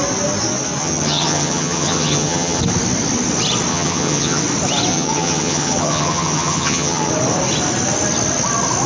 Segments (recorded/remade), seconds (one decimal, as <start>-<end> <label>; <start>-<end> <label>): 0.0-0.8 recorded; 0.8-2.6 remade; 2.6-3.7 recorded; 3.7-4.4 remade; 4.4-4.9 recorded; 4.9-7.1 remade; 7.1-8.9 recorded